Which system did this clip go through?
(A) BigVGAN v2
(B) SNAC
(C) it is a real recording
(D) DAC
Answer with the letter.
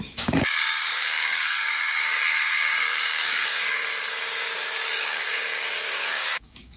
D